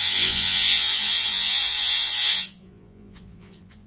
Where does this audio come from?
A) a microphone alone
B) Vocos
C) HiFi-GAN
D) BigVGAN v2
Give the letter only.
B